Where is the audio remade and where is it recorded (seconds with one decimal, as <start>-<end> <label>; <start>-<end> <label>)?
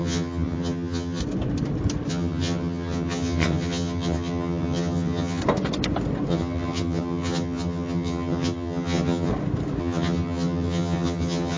0.0-1.2 remade; 1.2-2.1 recorded; 2.1-5.4 remade; 5.4-6.3 recorded; 6.3-9.3 remade; 9.3-9.8 recorded; 9.8-11.6 remade